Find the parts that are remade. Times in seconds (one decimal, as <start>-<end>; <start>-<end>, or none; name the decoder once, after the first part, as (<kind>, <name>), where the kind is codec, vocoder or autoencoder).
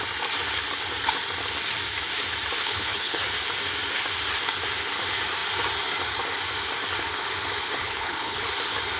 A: 2.6-3.2 (codec, HILCodec); 7.8-8.4